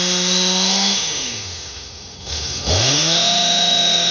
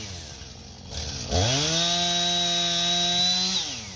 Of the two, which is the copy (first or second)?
first